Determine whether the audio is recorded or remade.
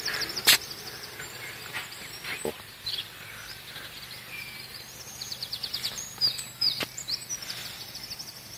remade